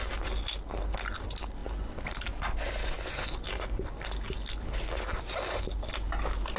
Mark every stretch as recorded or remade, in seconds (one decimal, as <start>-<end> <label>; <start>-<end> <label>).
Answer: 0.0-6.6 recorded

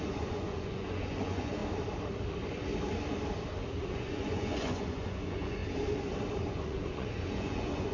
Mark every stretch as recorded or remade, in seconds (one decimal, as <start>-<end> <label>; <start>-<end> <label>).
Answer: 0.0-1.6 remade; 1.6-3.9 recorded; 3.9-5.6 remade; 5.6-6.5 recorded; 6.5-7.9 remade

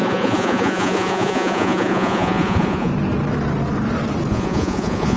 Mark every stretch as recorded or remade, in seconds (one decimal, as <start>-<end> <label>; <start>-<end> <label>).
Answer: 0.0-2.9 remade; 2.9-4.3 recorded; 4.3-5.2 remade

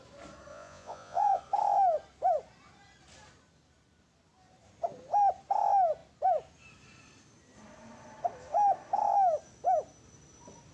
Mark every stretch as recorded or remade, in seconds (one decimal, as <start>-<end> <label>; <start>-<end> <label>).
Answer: 0.0-0.5 recorded; 0.5-1.4 remade; 1.4-10.7 recorded

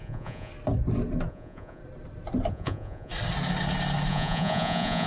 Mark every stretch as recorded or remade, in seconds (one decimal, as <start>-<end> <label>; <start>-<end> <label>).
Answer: 0.0-0.5 remade; 0.5-1.3 recorded; 1.3-1.8 remade; 1.8-2.5 recorded; 2.5-3.1 remade; 3.1-4.1 recorded; 4.1-5.1 remade

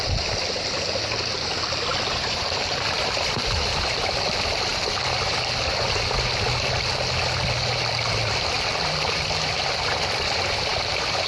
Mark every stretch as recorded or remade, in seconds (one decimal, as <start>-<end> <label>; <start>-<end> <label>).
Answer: 0.0-11.3 recorded

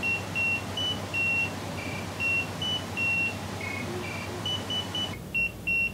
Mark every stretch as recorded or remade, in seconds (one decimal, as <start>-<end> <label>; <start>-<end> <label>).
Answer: 0.0-5.9 recorded